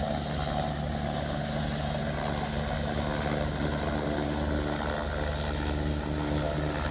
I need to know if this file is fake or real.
real